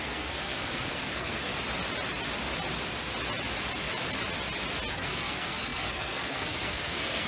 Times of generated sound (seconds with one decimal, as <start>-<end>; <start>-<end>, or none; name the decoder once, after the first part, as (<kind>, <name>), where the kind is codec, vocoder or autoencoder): 0.0-1.5 (codec, SNAC); 4.9-7.3